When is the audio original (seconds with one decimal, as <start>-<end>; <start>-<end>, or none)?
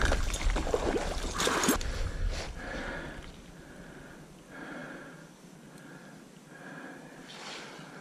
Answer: 0.0-8.0